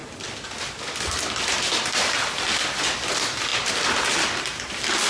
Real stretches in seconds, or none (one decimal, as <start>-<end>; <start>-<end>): 0.0-5.1